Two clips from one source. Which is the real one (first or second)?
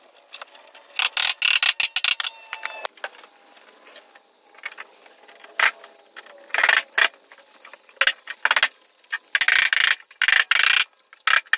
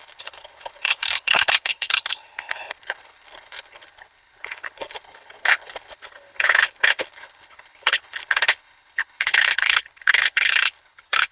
first